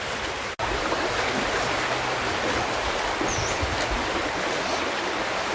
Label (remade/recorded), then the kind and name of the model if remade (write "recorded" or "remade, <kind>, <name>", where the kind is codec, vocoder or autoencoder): recorded